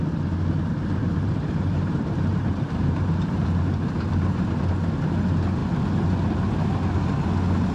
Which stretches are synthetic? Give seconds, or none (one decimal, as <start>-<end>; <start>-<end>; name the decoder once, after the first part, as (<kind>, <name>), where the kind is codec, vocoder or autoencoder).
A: 1.0-4.7 (vocoder, BigVGAN v2)